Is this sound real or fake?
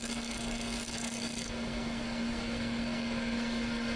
fake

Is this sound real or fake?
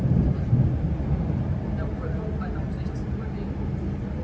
real